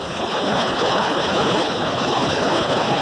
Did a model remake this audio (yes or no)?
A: yes